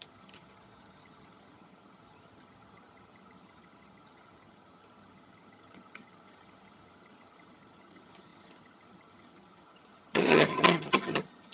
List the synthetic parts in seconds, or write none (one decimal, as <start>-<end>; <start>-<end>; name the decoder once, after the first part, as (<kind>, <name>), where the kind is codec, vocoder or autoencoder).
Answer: 0.0-11.5 (vocoder, HiFi-GAN)